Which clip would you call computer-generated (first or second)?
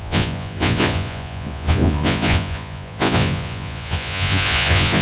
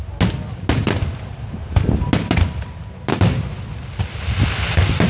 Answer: first